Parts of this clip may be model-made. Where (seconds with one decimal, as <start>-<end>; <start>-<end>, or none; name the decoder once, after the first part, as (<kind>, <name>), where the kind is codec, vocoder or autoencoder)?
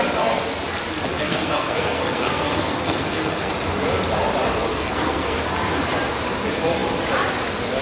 1.1-3.5 (codec, SNAC); 4.7-5.4